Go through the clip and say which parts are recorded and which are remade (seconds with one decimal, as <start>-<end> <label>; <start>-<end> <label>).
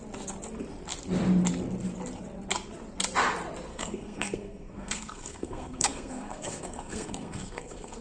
0.0-3.7 recorded; 3.7-8.0 remade